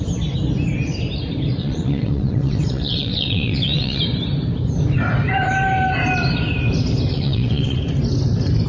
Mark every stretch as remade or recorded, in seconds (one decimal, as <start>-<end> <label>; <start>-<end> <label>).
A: 0.0-1.6 recorded; 1.6-4.0 remade; 4.0-7.1 recorded; 7.1-7.8 remade; 7.8-8.7 recorded